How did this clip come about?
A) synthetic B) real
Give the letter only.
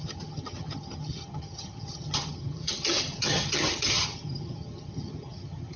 A